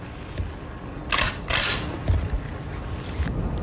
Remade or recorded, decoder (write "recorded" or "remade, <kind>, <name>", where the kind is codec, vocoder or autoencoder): recorded